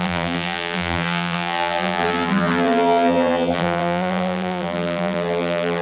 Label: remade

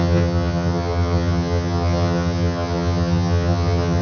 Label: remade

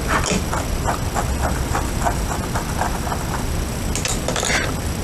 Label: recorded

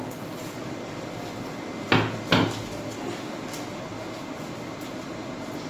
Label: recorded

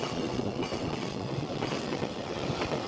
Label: remade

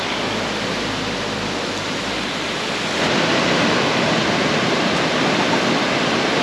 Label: recorded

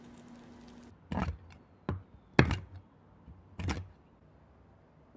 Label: recorded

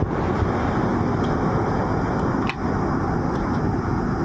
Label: recorded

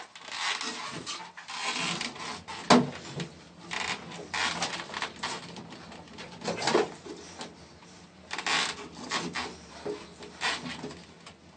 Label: recorded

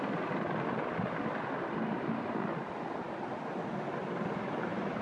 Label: recorded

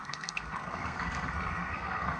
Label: remade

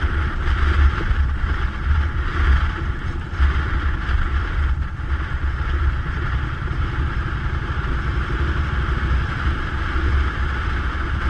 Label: remade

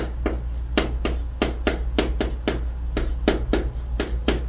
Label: recorded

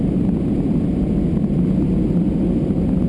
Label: recorded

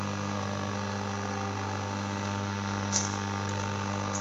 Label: remade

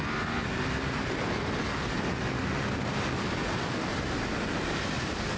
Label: recorded